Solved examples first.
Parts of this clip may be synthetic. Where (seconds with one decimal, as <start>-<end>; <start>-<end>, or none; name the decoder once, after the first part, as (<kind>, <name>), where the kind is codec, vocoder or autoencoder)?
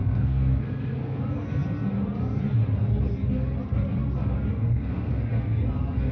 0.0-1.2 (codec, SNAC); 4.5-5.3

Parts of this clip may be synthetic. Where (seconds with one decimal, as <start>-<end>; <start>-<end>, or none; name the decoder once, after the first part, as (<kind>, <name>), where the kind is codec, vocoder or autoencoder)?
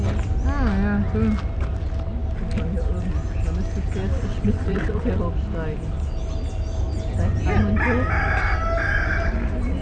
4.3-5.2 (vocoder, WaveNeXt)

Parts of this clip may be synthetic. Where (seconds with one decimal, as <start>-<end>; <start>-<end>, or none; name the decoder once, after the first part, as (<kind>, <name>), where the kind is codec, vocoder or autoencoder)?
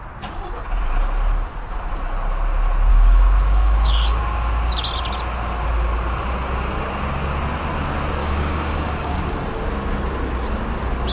2.9-4.2 (codec, DAC); 8.2-9.2